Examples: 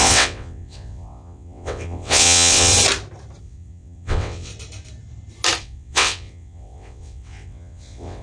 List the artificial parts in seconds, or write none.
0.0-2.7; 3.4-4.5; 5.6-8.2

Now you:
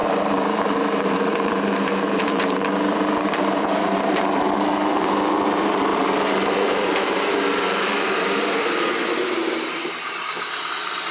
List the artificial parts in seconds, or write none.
0.0-4.2; 5.9-8.4

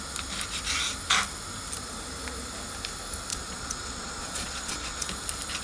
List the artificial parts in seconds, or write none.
3.3-5.1

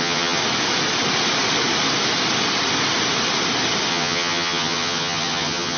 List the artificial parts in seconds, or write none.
0.0-0.4; 3.9-5.8

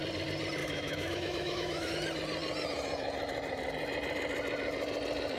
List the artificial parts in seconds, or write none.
0.6-1.9

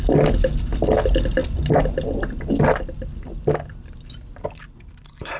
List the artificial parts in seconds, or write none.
none

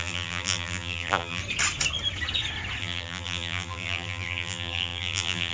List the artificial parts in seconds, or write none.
0.0-1.4; 2.8-5.5

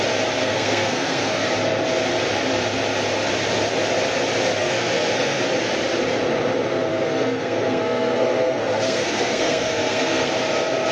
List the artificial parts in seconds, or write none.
0.4-1.5; 4.6-5.4; 6.9-10.3